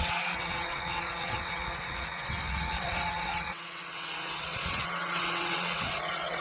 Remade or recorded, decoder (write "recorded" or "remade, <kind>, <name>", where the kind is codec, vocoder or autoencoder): remade, vocoder, WaveNeXt